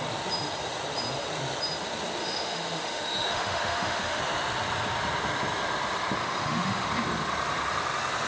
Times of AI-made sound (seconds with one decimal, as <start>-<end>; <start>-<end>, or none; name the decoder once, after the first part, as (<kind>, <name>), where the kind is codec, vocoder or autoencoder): 2.2-4.2 (autoencoder, DAC-VAE); 6.2-6.9

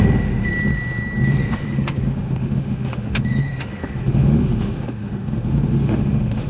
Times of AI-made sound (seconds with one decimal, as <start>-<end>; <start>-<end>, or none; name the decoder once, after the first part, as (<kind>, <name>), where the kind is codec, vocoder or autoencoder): 0.0-0.5 (autoencoder, DAC-VAE); 1.3-6.5

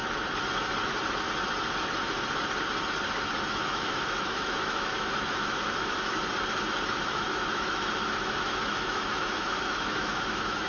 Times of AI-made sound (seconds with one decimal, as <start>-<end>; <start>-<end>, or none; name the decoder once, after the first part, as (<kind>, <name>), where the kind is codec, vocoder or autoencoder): 3.5-6.1 (autoencoder, DAC-VAE); 6.9-10.7

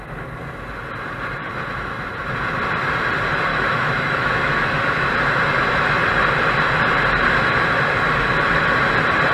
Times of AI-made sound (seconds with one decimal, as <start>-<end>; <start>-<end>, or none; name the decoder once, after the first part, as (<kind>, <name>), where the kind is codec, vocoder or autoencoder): 3.5-5.1 (autoencoder, DAC-VAE)